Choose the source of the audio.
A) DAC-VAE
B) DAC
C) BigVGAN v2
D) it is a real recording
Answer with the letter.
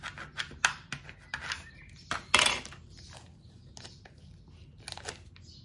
D